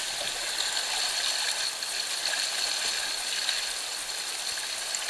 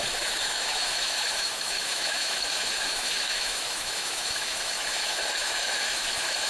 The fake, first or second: second